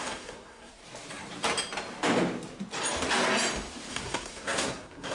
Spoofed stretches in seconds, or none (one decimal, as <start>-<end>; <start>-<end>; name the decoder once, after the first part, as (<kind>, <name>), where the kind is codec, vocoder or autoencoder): 0.0-0.8 (codec, SNAC); 3.9-5.1